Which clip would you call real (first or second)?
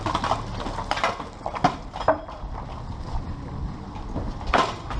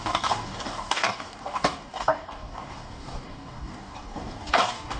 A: first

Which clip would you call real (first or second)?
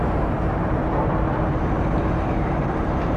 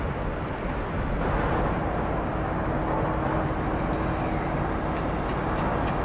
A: second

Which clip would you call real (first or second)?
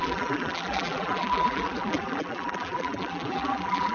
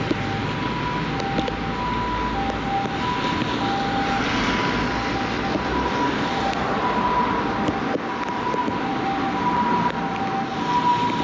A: second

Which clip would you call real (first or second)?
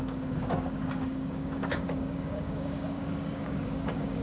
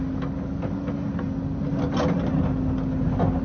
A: second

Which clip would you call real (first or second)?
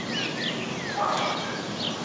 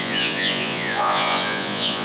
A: first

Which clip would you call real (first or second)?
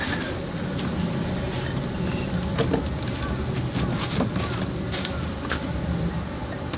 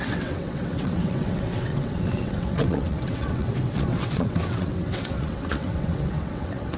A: first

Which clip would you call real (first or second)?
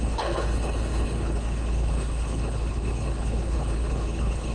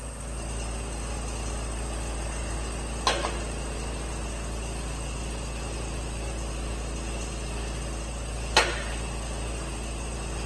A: second